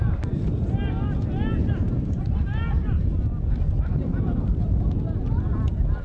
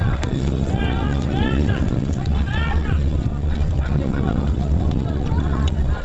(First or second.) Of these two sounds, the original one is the first